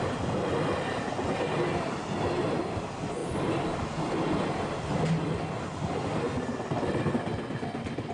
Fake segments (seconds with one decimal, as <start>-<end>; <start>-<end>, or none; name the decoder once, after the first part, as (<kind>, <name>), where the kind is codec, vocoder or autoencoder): none